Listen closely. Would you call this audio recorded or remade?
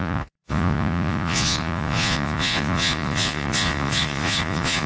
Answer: remade